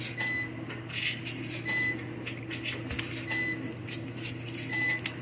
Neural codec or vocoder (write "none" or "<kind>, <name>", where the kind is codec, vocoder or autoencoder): none